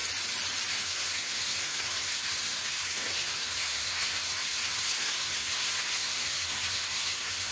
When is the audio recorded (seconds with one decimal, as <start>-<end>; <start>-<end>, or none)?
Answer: 0.0-0.7